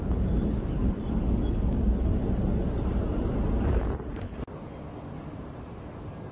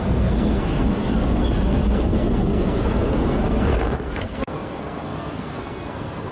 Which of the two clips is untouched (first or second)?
first